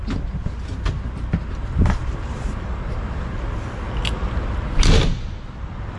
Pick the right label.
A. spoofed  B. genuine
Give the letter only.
B